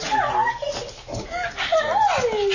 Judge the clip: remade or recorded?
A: recorded